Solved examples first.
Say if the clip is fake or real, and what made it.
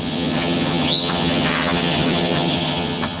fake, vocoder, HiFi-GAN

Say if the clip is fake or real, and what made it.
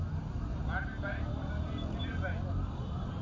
real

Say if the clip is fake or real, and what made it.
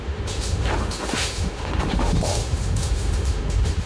fake, autoencoder, DAC-VAE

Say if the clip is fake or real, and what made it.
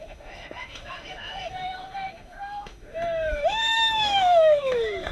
fake, autoencoder, DAC-VAE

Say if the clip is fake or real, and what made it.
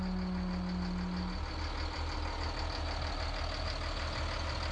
real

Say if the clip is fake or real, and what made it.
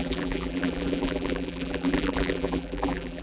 fake, vocoder, BigVGAN v2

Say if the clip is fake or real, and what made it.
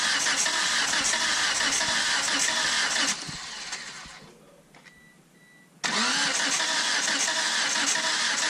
real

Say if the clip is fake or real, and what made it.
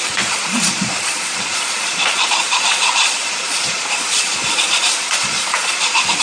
fake, vocoder, Vocos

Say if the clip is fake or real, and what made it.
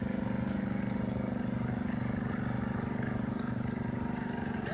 real